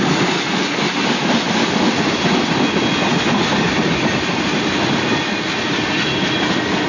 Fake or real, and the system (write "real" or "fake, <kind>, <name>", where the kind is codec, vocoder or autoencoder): real